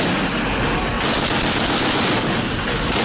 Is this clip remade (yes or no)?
no